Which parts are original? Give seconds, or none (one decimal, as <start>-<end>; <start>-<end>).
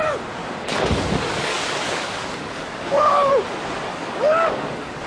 0.0-0.4; 3.3-3.9